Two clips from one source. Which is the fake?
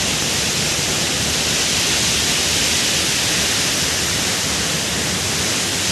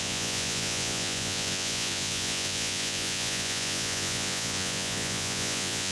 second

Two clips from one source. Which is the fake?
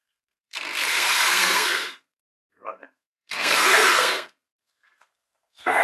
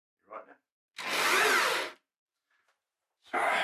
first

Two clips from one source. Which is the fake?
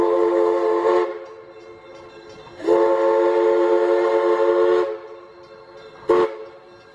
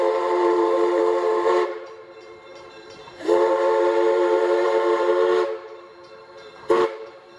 second